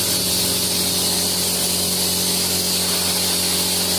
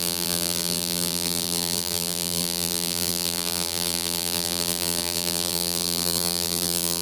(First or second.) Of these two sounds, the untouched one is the first